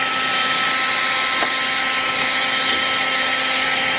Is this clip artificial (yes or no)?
no